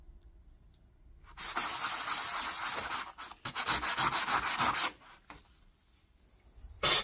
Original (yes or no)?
yes